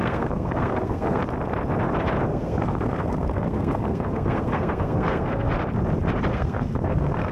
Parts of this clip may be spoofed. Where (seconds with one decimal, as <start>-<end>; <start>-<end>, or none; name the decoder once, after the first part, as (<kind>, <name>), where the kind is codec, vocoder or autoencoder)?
0.0-1.2 (codec, SNAC); 2.3-5.5; 6.3-7.3